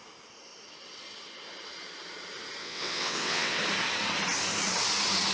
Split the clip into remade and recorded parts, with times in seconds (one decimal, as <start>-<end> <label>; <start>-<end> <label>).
0.0-2.6 recorded; 2.6-3.6 remade; 3.6-5.3 recorded